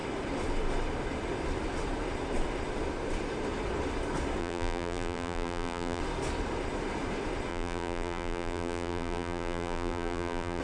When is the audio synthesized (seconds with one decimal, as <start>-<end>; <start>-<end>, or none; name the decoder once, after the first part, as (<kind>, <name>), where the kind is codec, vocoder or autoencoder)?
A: 4.4-6.0 (vocoder, BigVGAN v2); 7.5-10.6